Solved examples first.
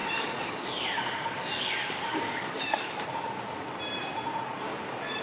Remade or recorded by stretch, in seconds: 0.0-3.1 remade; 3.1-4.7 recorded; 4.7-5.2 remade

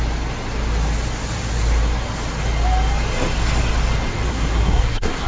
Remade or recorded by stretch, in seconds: 0.0-4.3 recorded; 4.3-5.3 remade